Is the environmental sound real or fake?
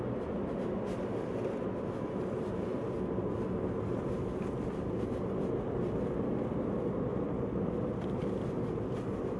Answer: real